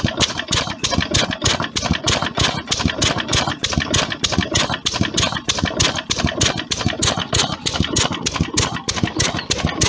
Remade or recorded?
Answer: recorded